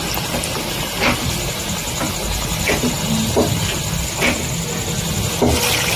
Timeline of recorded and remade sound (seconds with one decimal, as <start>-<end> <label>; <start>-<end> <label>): 0.0-6.0 recorded